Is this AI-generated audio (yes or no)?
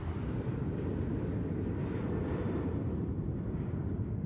yes